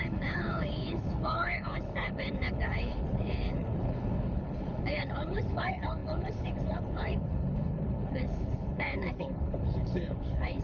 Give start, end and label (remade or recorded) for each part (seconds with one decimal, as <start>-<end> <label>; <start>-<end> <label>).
0.0-10.6 remade